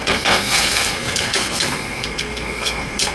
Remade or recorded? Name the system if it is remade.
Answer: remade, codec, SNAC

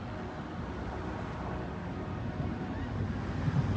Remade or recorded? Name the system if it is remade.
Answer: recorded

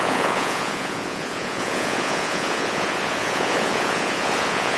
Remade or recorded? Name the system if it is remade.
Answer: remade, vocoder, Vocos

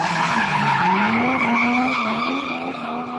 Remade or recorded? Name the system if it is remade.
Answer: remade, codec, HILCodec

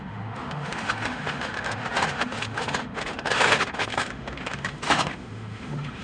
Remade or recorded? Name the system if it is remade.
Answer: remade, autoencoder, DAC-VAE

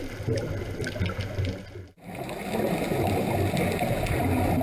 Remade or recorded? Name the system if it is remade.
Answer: recorded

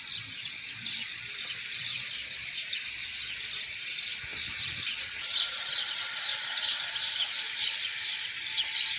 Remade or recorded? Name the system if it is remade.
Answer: remade, vocoder, BigVGAN v2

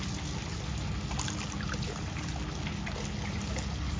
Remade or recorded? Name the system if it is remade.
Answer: recorded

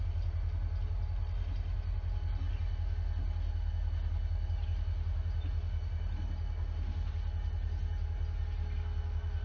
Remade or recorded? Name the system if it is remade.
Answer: recorded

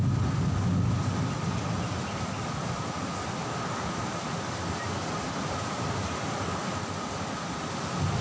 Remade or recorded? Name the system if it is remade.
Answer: recorded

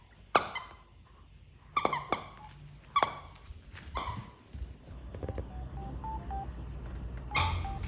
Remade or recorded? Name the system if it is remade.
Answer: recorded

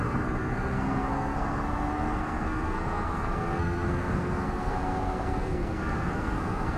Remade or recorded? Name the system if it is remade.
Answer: remade, codec, SNAC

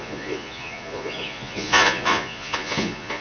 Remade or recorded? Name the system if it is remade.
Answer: remade, vocoder, Vocos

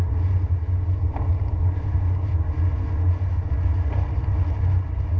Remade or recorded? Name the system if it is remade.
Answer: recorded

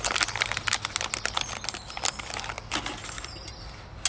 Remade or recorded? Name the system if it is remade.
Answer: recorded